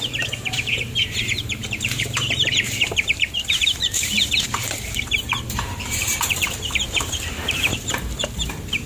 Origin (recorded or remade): remade